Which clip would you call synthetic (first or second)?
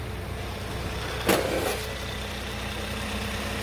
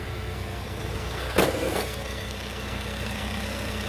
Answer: second